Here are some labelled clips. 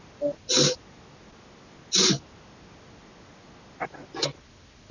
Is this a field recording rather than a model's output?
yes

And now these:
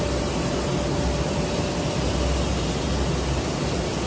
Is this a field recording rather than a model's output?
yes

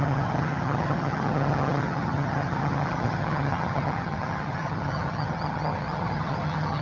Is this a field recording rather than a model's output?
no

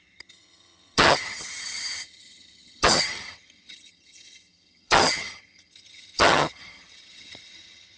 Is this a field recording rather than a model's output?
no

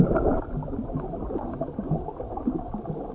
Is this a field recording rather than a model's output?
yes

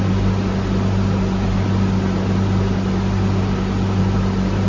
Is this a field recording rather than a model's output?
yes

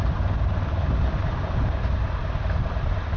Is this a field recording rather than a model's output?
yes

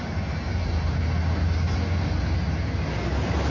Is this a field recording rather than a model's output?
yes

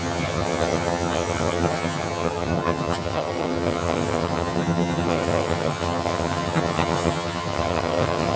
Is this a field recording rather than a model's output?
no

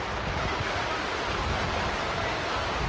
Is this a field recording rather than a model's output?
yes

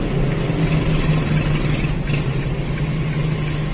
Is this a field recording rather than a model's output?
yes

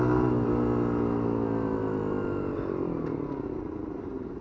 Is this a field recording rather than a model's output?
yes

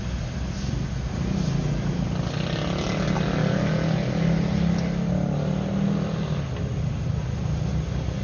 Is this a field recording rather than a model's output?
yes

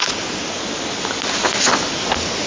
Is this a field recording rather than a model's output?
yes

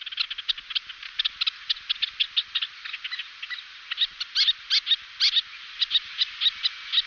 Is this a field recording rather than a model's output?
yes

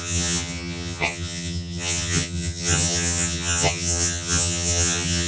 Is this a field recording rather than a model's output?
no